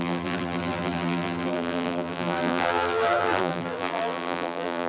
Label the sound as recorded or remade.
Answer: remade